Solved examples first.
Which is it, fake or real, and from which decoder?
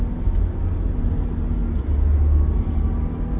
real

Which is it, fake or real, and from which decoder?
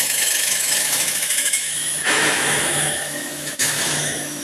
fake, autoencoder, DAC-VAE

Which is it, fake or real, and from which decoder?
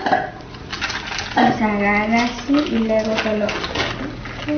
real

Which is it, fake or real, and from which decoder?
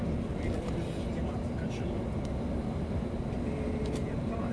real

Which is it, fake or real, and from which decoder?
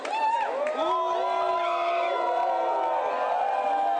real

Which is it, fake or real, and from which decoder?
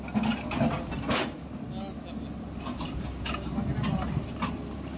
real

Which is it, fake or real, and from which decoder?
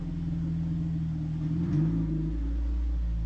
real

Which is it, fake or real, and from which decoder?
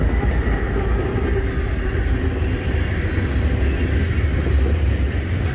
real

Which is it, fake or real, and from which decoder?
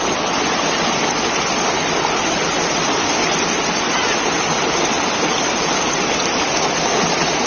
real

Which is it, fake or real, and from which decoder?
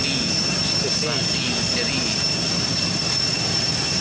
real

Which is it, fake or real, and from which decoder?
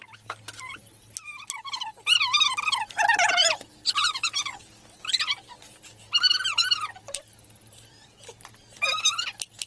real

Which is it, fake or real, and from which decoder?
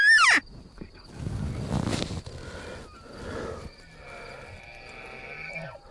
real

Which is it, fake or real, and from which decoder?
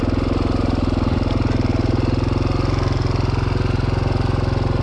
real